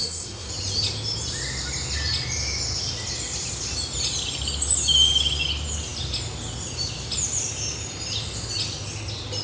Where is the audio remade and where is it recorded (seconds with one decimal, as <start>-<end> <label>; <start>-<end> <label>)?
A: 0.0-0.5 remade; 0.5-9.4 recorded